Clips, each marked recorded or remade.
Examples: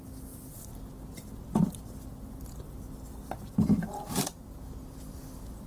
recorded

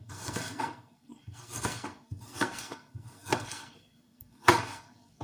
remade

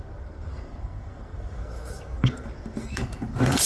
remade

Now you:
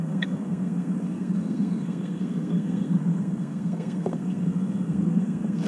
remade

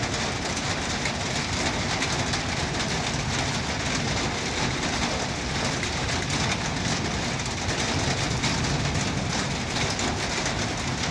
recorded